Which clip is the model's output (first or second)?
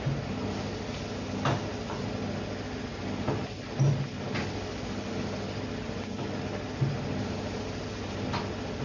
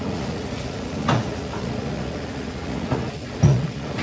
second